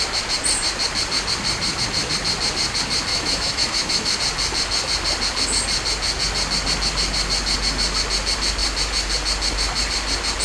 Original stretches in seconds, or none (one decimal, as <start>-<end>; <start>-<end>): 0.0-3.1; 4.2-10.4